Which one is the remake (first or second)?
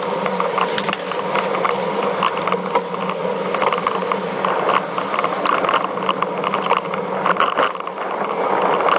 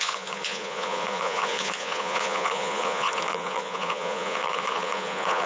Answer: second